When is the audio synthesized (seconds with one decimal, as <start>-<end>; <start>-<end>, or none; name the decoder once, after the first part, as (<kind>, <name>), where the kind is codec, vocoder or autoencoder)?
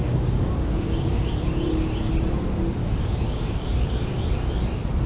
0.0-1.3 (codec, DAC); 2.8-4.2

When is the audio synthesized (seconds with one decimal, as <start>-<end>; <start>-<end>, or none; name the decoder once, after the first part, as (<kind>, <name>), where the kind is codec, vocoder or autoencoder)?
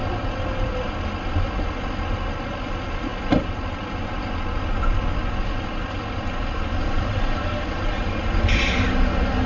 none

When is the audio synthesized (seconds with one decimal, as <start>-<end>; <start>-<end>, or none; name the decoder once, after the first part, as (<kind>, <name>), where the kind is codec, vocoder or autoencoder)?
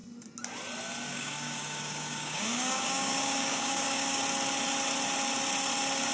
1.1-4.2 (codec, DAC)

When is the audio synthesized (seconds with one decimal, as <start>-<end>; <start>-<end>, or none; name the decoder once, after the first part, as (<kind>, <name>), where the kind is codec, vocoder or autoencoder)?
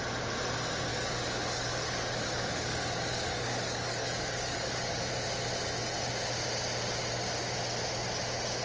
0.9-5.1 (codec, DAC)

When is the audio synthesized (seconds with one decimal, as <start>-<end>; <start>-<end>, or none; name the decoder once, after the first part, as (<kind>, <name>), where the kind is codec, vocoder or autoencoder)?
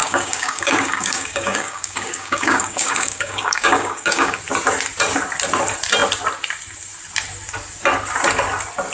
0.0-4.4 (codec, DAC)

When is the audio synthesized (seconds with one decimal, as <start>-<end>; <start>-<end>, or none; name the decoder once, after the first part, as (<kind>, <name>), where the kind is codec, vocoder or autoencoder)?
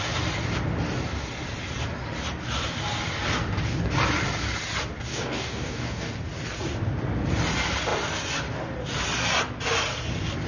5.1-6.1 (codec, DAC)